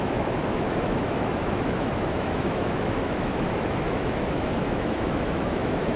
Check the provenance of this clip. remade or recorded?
remade